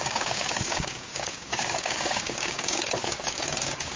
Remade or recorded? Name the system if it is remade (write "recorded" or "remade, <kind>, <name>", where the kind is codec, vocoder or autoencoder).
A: remade, codec, DAC